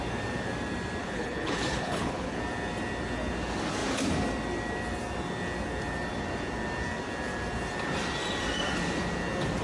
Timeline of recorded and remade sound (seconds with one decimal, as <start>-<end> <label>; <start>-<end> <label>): 0.0-1.0 recorded; 1.0-2.4 remade; 2.4-9.6 recorded